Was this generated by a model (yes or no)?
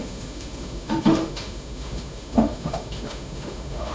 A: yes